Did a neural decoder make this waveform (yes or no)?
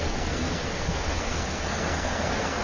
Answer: yes